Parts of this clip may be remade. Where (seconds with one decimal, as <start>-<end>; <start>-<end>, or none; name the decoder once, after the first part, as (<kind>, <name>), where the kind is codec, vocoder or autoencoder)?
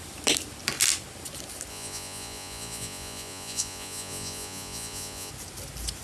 1.7-5.3 (vocoder, Vocos)